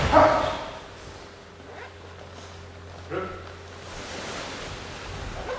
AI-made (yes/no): no